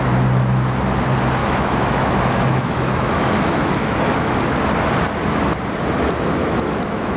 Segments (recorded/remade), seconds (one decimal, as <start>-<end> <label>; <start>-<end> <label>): 0.0-1.4 recorded; 1.4-4.6 remade; 4.6-6.4 recorded; 6.4-7.2 remade

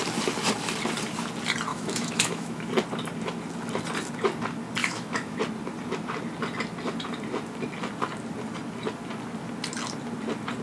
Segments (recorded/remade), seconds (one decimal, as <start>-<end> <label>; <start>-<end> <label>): 0.0-1.7 recorded; 1.7-2.7 remade; 2.7-4.8 recorded; 4.8-5.4 remade; 5.4-10.6 recorded

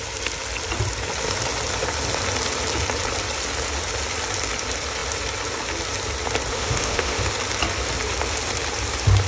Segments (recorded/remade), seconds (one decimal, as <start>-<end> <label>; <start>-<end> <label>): 0.0-6.5 recorded; 6.5-7.2 remade; 7.2-9.3 recorded

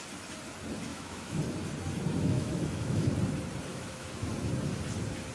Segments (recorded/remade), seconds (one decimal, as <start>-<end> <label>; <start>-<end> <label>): 0.0-0.9 recorded; 0.9-1.4 remade; 1.4-2.2 recorded; 2.2-3.1 remade; 3.1-3.7 recorded; 3.7-4.3 remade; 4.3-5.3 recorded

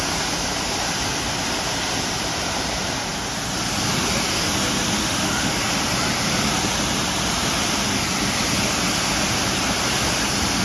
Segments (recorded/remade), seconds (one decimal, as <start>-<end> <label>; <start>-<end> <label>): 0.0-5.0 recorded; 5.0-5.5 remade; 5.5-10.6 recorded

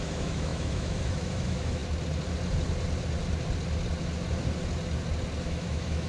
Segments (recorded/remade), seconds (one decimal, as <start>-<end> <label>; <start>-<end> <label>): 0.0-1.8 remade; 1.8-5.4 recorded; 5.4-6.1 remade

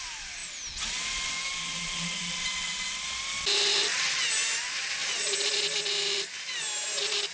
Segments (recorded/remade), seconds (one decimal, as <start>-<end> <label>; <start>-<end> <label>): 0.0-7.3 recorded

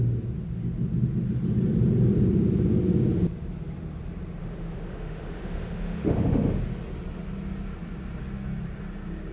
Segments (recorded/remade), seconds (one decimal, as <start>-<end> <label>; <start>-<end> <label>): 0.0-4.4 recorded; 4.4-6.6 remade; 6.6-9.3 recorded